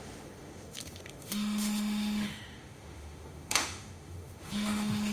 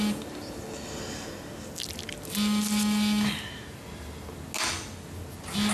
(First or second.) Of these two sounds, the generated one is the first